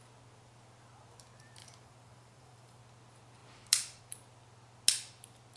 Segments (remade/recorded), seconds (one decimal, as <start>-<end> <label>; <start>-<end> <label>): 0.0-1.6 recorded; 1.6-2.8 remade; 2.8-5.6 recorded